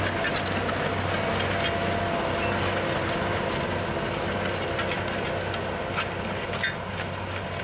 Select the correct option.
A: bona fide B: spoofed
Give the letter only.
A